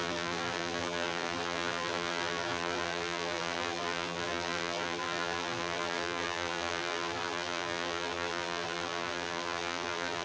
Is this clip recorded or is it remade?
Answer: remade